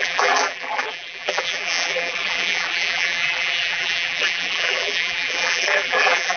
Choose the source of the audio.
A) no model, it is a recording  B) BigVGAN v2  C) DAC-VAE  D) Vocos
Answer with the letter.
B